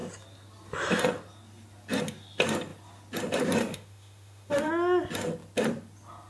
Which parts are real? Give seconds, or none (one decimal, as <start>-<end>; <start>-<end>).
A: 0.0-3.6; 4.7-6.3